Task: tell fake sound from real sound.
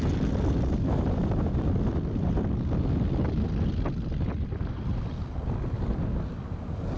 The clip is real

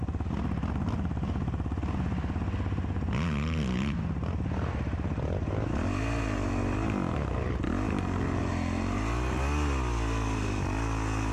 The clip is real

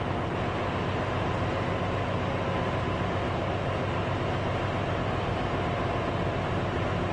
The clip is real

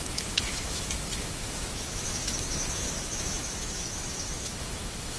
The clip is fake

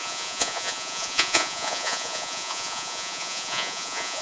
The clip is fake